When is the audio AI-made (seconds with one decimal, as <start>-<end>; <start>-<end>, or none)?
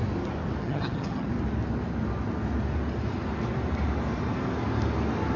0.6-1.3